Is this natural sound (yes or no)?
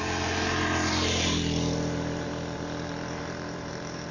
no